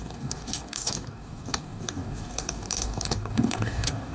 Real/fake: fake